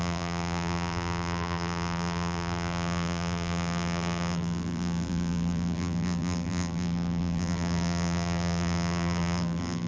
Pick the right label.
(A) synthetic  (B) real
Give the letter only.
A